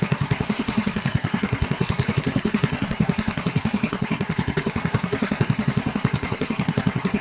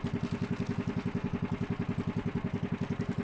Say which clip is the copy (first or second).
first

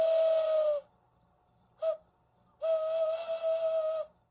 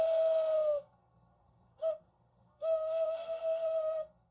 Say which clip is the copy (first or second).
second